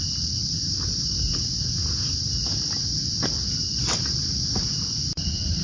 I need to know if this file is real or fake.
real